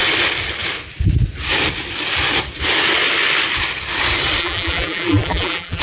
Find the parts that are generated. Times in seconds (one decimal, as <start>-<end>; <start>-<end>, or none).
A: 4.4-5.8